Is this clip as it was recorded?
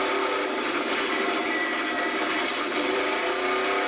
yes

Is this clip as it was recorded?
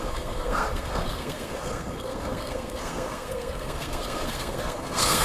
no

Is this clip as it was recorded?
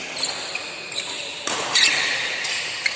yes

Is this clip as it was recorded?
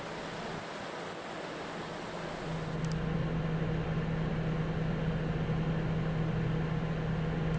yes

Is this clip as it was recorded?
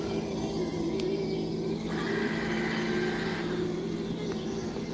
yes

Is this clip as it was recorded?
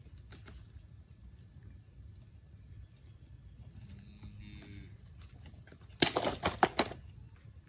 yes